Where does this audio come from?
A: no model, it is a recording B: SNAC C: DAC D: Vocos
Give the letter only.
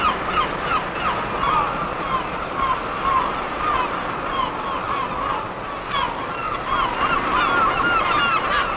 A